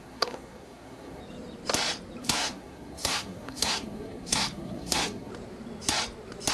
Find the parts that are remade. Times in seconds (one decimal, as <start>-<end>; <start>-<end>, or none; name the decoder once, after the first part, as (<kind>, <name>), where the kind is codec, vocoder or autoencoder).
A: 0.0-1.2 (codec, SNAC); 2.2-5.3

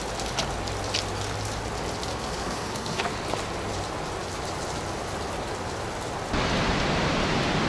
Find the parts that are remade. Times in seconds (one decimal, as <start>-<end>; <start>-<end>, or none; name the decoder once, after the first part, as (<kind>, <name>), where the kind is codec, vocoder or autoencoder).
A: 2.1-3.1 (codec, SNAC)